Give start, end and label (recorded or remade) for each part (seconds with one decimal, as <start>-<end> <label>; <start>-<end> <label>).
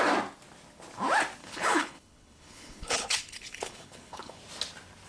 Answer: 0.0-1.4 recorded; 1.4-4.4 remade; 4.4-5.1 recorded